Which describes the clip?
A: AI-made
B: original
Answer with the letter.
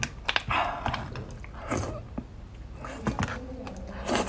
B